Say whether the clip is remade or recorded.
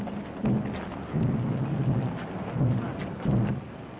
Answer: recorded